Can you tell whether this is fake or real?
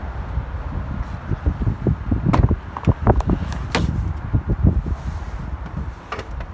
real